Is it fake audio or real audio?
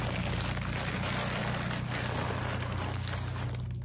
real